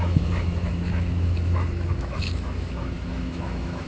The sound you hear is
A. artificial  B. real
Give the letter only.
A